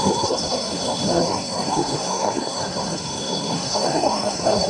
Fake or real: fake